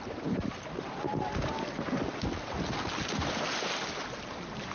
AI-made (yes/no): no